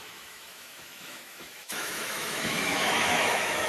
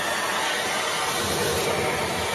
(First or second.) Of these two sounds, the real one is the second